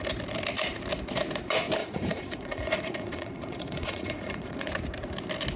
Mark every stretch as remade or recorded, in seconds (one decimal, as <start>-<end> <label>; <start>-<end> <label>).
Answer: 0.0-1.8 recorded; 1.8-4.7 remade; 4.7-5.6 recorded